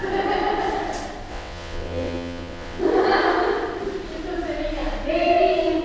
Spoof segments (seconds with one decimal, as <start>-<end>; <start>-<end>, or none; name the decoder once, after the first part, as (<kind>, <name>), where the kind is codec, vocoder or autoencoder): 1.3-2.8 (vocoder, WaveNeXt)